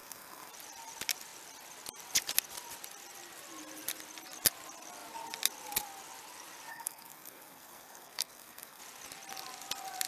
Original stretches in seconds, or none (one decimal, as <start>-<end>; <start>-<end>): 0.5-6.7; 8.8-10.1